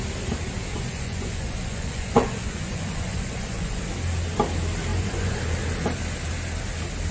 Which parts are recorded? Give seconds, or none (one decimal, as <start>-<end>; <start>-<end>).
0.0-0.7; 3.8-4.9; 5.4-7.1